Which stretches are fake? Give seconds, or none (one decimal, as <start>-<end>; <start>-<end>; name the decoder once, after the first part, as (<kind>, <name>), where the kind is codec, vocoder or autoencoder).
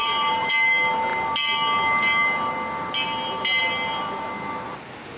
0.0-0.5 (vocoder, BigVGAN v2)